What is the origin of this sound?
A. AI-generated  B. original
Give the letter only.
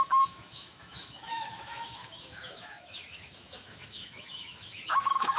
A